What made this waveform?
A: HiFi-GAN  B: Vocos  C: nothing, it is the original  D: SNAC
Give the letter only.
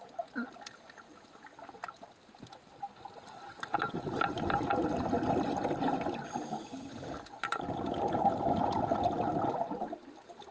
C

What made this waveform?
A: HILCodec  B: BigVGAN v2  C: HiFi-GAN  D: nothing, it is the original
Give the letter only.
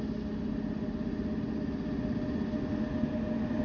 D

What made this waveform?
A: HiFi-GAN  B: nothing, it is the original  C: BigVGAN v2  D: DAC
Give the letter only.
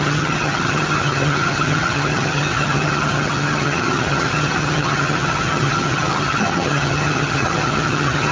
A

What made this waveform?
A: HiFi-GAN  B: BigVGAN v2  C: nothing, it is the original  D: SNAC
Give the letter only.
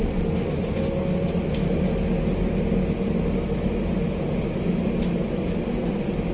C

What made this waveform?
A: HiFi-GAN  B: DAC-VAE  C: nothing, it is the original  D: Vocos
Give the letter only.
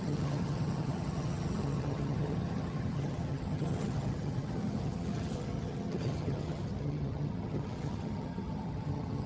A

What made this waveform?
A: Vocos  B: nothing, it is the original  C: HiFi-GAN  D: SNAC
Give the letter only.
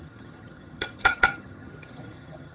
C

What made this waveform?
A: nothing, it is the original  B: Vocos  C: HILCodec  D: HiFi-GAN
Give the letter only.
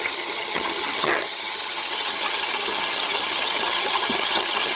D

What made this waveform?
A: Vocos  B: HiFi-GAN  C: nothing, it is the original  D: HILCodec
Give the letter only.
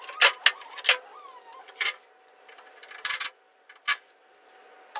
C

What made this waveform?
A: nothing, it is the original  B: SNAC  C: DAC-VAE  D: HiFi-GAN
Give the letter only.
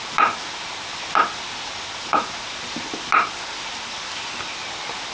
A